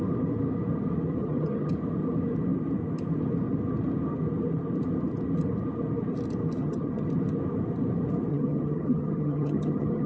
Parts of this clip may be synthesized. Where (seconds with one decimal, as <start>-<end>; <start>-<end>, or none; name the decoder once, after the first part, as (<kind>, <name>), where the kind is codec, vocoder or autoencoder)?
1.2-1.7 (vocoder, HiFi-GAN); 6.6-7.1; 8.3-10.1